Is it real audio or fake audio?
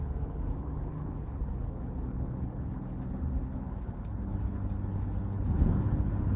fake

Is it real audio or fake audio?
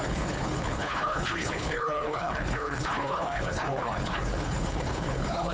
fake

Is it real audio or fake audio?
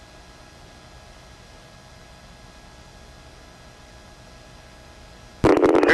real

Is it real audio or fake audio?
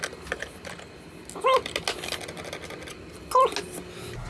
real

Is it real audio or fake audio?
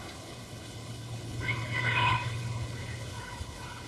fake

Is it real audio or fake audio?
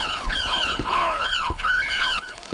fake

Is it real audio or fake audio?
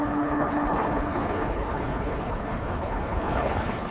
fake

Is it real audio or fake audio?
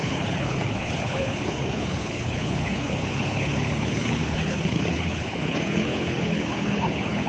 fake